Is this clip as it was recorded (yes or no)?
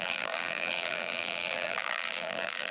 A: no